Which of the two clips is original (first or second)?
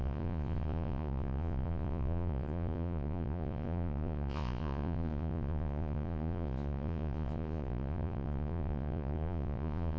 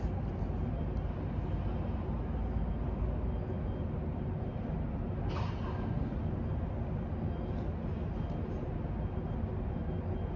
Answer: second